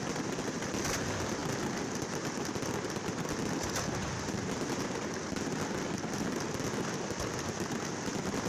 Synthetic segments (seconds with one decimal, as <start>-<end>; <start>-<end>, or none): none